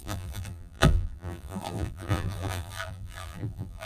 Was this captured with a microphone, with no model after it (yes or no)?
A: no